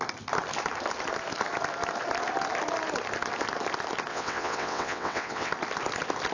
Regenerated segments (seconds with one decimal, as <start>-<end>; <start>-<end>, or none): 4.1-5.5